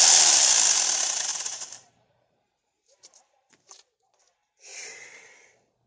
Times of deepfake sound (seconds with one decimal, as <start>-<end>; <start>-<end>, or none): 1.3-4.2; 4.7-5.2